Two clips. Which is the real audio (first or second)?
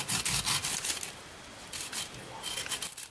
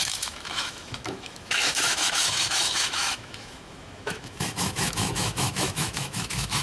first